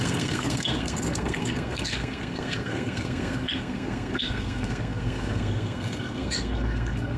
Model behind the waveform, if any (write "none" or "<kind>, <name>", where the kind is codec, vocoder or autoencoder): codec, SNAC